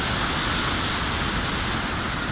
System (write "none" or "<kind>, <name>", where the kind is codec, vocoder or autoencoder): none